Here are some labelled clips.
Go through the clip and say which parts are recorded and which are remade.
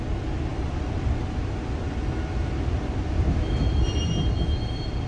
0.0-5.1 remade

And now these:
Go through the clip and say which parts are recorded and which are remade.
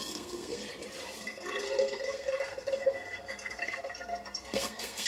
0.0-0.6 remade; 0.6-1.2 recorded; 1.2-5.1 remade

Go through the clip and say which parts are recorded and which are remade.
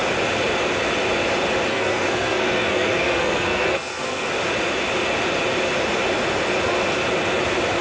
0.0-1.7 recorded; 1.7-4.3 remade; 4.3-7.8 recorded